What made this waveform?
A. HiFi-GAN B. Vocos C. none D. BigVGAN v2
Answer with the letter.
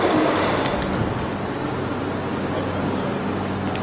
C